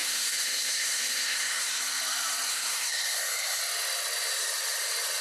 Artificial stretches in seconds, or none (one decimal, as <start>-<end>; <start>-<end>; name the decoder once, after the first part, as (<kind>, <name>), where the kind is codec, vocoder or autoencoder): 0.0-1.8 (codec, SNAC); 2.5-3.6